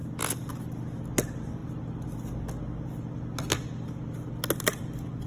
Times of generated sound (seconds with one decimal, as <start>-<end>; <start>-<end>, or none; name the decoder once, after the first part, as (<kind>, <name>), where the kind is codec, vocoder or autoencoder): none